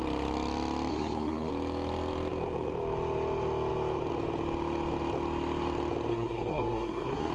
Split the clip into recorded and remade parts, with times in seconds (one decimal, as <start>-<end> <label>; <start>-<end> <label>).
0.0-0.9 recorded; 0.9-1.5 remade; 1.5-6.1 recorded; 6.1-7.3 remade